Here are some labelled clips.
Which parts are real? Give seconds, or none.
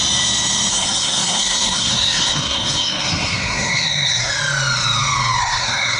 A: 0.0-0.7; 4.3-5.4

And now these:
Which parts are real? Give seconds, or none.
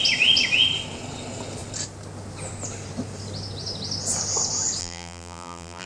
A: 0.0-4.8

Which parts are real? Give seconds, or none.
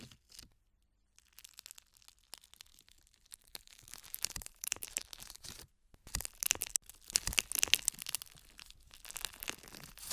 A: 0.0-2.7; 6.0-10.1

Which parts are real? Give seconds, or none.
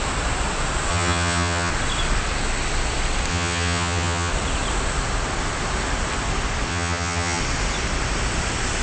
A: 0.0-0.9; 1.7-3.3; 4.3-6.7; 7.4-8.8